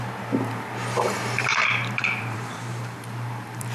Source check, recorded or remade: remade